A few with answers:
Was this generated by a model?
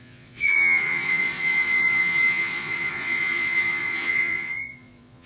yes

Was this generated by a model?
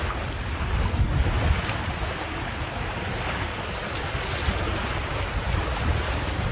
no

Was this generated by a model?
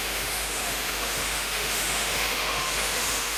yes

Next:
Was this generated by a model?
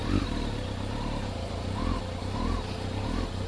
no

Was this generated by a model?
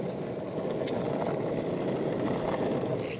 no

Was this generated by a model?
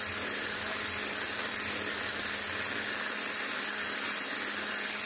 no